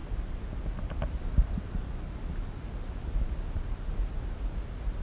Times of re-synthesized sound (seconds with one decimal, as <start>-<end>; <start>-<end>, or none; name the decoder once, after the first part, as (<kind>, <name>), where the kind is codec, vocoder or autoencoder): none